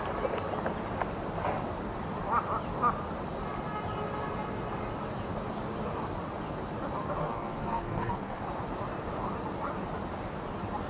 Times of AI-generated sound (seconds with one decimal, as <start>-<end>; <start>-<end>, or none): 7.2-8.4